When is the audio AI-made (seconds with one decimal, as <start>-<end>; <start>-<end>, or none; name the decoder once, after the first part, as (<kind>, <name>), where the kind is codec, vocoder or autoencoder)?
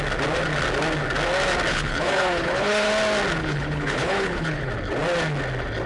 1.7-2.9 (codec, HILCodec); 3.4-4.7